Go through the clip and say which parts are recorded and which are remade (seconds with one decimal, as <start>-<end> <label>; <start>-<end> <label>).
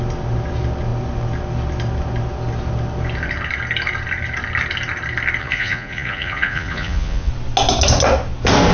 0.0-5.4 recorded; 5.4-7.3 remade; 7.3-8.7 recorded